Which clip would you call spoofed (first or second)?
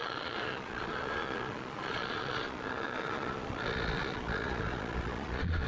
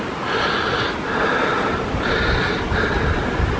first